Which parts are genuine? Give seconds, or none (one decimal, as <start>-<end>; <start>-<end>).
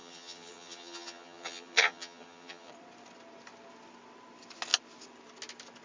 2.7-5.8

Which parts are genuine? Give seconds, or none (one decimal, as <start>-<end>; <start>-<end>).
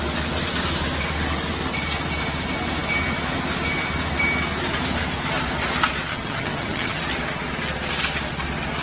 0.0-6.1; 7.0-8.8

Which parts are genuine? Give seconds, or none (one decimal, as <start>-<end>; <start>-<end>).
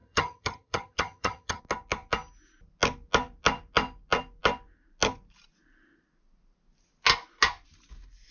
1.6-8.3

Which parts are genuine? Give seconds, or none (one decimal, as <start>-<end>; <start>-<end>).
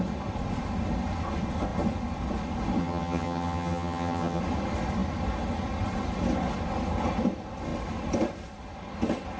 0.0-2.8; 4.4-9.4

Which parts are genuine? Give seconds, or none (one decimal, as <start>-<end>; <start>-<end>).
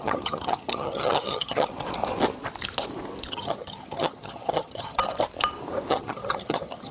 1.7-3.3; 5.0-5.9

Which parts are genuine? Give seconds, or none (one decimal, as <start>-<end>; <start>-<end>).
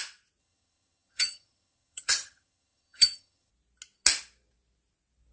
0.0-0.4; 3.5-5.3